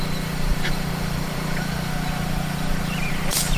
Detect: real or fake fake